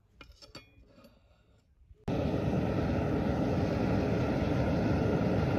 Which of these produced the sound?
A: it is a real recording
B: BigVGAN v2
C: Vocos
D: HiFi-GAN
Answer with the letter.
A